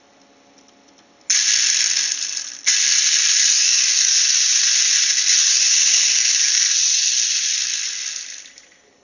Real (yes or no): yes